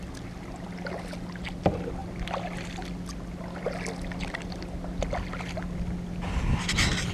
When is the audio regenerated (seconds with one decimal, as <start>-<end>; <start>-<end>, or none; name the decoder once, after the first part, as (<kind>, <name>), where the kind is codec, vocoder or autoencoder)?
none